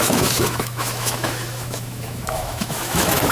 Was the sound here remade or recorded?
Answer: remade